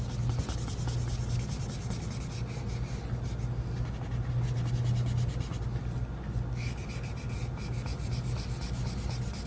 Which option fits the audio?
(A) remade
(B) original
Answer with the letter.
B